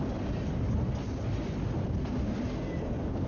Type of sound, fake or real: real